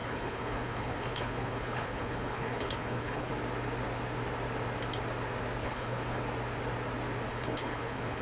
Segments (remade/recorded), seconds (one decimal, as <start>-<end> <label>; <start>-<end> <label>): 0.0-3.3 remade; 3.3-5.6 recorded; 5.6-6.2 remade; 6.2-7.3 recorded; 7.3-8.2 remade